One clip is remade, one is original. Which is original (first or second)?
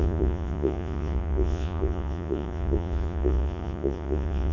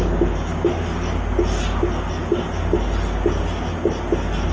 second